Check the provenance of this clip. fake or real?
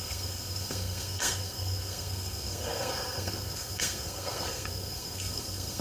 fake